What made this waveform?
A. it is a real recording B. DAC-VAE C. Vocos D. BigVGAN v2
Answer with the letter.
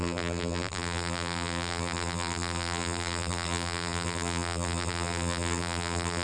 D